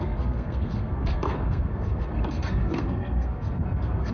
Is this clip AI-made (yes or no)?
yes